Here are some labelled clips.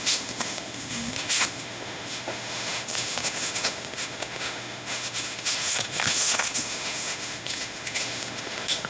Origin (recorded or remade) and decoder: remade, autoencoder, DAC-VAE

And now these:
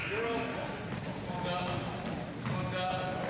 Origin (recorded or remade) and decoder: recorded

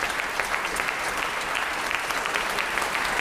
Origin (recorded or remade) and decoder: recorded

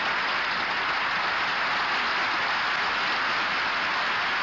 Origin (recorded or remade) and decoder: recorded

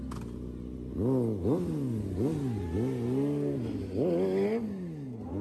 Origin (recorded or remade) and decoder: recorded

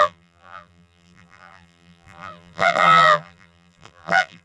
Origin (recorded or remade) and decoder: remade, vocoder, BigVGAN v2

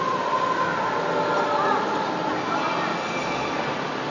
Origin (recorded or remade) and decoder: recorded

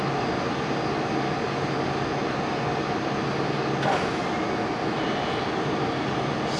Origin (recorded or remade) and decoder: recorded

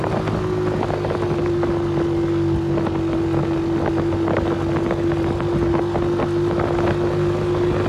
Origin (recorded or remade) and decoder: recorded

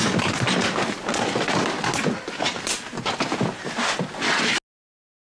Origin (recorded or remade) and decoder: recorded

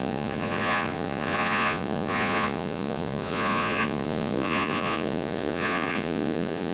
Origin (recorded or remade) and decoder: remade, vocoder, Vocos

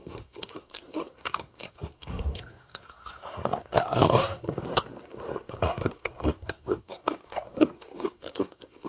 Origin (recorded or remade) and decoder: remade, codec, SNAC